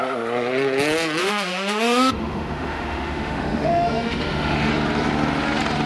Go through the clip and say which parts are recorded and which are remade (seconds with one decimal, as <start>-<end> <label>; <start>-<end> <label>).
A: 0.0-1.2 recorded; 1.2-4.7 remade; 4.7-5.9 recorded